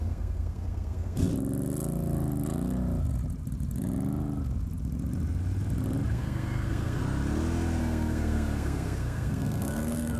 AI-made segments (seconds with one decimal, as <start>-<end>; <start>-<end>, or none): 0.0-1.3; 6.1-7.0; 7.8-10.2